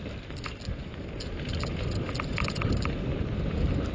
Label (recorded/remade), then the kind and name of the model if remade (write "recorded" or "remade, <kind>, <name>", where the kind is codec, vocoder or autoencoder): recorded